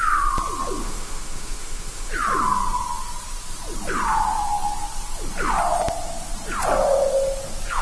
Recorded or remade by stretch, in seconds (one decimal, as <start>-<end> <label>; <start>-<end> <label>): 0.0-0.8 recorded; 0.8-2.1 remade; 2.1-7.8 recorded